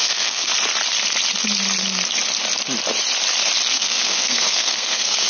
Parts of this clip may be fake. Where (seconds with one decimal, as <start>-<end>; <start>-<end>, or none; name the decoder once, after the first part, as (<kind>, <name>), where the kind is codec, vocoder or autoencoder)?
0.0-0.5 (codec, SNAC); 3.7-5.3